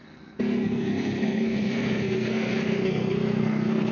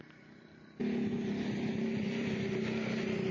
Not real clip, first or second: first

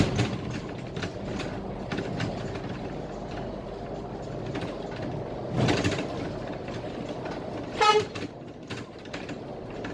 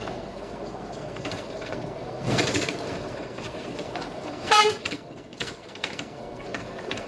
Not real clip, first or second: second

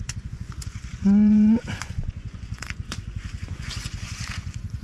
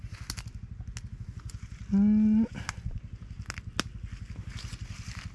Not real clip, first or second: first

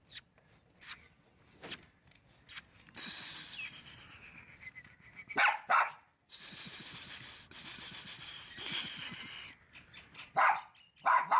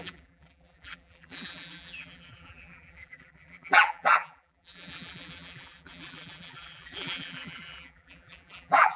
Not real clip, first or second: second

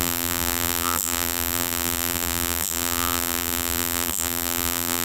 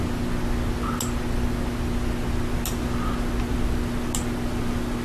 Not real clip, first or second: first